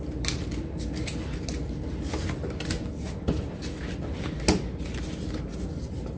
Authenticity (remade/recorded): recorded